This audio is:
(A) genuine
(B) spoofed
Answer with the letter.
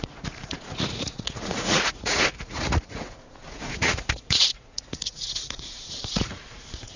B